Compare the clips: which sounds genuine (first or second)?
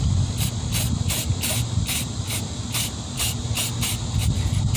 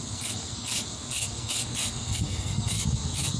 first